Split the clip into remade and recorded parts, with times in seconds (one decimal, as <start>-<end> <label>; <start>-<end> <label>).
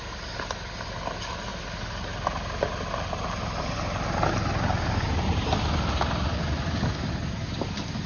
0.0-8.1 recorded